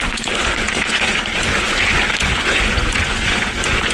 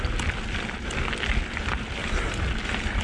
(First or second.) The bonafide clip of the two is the second